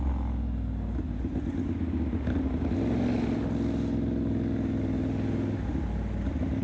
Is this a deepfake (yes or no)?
no